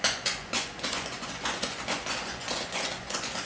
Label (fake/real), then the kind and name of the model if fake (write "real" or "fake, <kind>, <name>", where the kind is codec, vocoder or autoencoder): fake, vocoder, Vocos